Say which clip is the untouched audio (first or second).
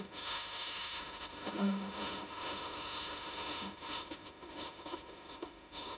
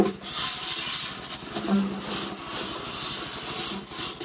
second